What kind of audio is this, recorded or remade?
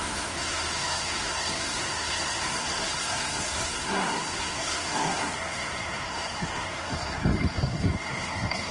remade